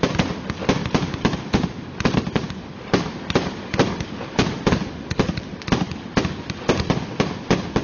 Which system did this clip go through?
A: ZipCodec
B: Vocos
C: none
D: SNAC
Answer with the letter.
C